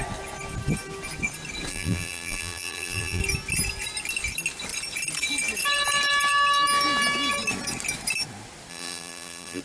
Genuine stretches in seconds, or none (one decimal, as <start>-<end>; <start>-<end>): 0.0-1.7; 3.2-8.7